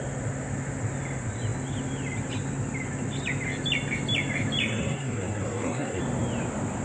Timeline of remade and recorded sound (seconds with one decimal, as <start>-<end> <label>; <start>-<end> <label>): 0.0-4.6 recorded; 4.6-6.0 remade; 6.0-6.8 recorded